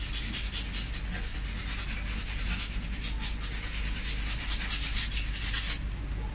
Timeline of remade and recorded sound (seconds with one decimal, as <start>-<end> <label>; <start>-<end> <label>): 0.0-1.3 recorded; 1.3-5.1 remade; 5.1-6.3 recorded